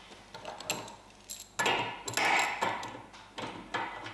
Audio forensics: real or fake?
real